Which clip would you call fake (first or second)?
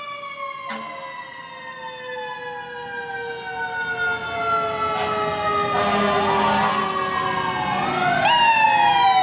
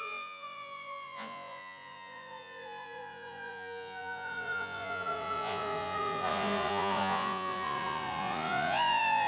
second